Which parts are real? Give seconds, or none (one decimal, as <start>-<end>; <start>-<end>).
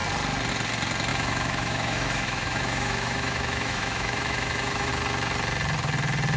0.0-1.1; 4.9-6.4